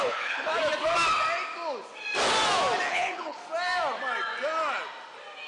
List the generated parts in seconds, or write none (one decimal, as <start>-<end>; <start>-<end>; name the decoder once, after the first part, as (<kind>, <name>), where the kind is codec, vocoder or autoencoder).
0.0-0.5 (codec, HILCodec); 2.9-3.4